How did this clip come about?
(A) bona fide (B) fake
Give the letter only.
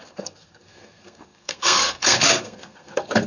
B